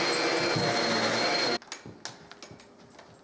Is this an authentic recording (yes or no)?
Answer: yes